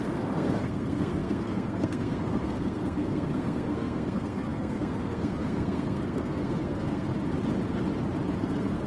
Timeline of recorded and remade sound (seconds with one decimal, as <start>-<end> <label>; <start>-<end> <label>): 0.0-7.1 remade; 7.1-8.4 recorded; 8.4-8.9 remade